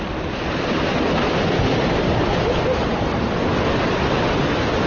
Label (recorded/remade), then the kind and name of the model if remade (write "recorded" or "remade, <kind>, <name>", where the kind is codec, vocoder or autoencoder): remade, vocoder, BigVGAN v2